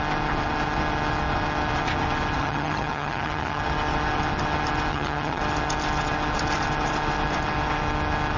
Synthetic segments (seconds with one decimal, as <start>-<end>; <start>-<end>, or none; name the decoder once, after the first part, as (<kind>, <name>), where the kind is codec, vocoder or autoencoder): 2.4-3.6 (vocoder, HiFi-GAN); 4.9-5.4